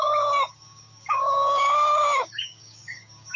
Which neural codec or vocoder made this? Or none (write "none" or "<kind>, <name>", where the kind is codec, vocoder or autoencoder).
codec, DAC